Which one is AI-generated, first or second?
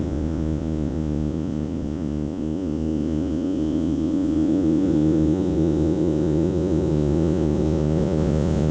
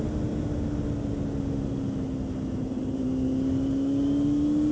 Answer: first